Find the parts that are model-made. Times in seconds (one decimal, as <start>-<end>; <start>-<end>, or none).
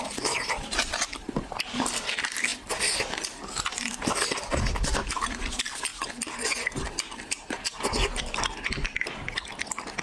0.0-5.9; 6.8-10.0